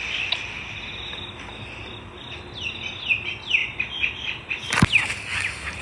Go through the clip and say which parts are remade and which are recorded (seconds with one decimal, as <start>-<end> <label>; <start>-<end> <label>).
0.0-5.8 recorded